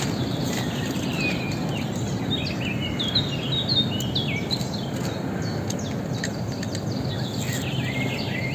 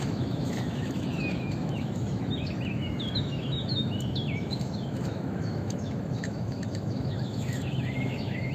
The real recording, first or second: first